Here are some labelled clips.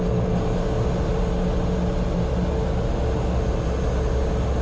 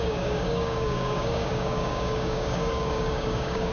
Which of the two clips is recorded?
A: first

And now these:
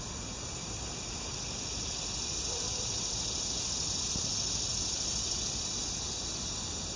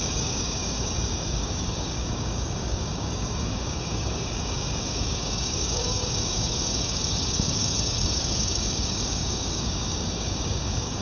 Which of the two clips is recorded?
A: first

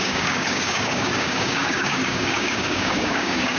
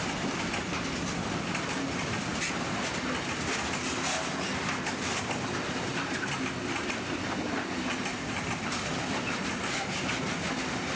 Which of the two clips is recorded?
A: second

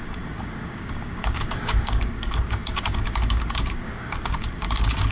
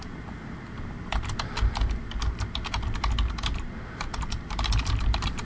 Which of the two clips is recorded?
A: second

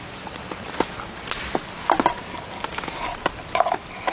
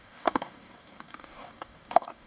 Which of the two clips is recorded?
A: first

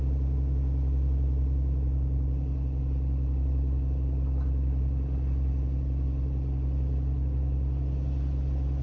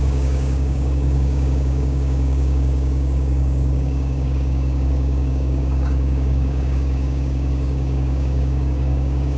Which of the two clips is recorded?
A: first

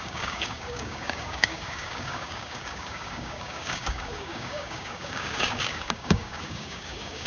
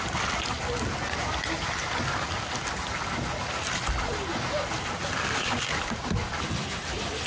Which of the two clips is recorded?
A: second